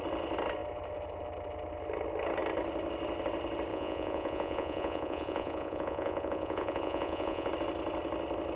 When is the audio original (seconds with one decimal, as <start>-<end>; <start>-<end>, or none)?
0.0-3.7; 7.5-8.6